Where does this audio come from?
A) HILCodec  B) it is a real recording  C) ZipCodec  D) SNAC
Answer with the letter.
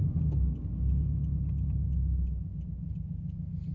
B